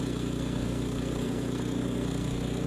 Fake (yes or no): yes